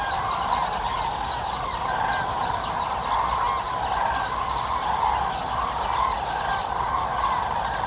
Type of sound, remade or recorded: recorded